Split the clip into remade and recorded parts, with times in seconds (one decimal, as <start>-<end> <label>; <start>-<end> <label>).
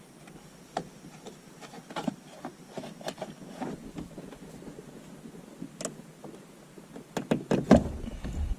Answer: 0.0-2.0 recorded; 2.0-2.7 remade; 2.7-8.6 recorded